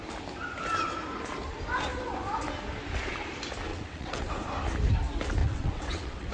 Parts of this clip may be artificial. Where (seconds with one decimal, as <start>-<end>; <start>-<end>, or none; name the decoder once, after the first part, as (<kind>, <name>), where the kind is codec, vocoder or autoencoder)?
3.7-4.3 (vocoder, WaveNeXt); 5.4-6.3